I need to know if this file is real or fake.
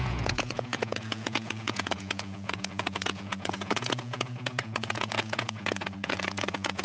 fake